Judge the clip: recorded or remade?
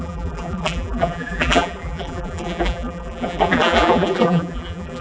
remade